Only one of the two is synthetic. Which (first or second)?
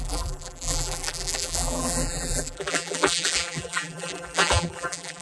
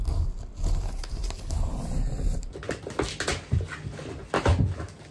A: first